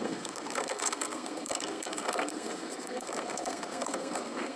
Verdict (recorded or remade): remade